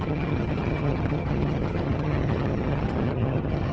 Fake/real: fake